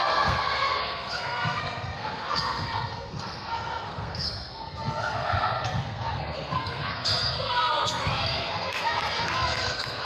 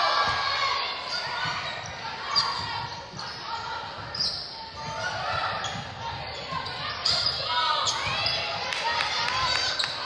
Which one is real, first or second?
second